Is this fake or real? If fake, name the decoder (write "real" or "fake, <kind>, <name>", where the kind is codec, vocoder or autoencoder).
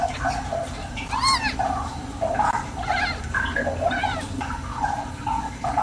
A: real